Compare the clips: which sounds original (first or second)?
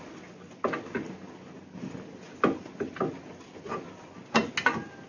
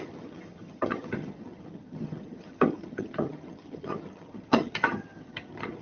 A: first